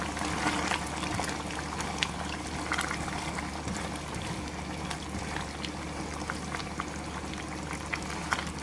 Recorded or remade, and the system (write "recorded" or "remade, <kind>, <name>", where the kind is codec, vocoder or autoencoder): recorded